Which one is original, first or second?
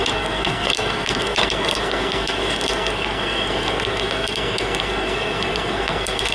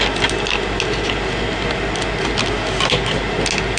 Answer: second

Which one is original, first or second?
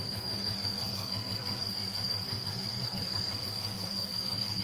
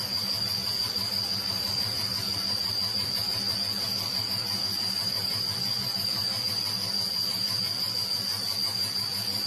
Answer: second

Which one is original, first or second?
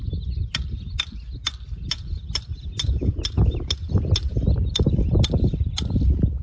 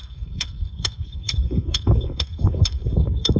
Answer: first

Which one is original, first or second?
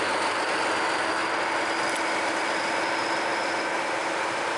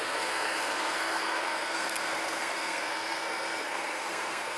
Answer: first